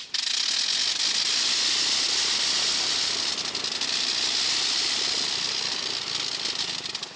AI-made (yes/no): no